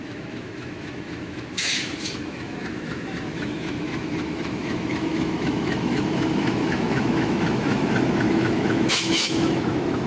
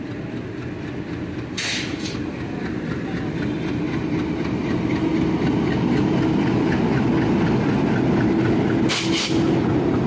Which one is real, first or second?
second